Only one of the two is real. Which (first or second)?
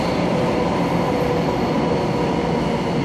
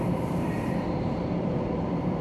first